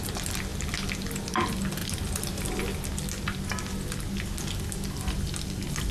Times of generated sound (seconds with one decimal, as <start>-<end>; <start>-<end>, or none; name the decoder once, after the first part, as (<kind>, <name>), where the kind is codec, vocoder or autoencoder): none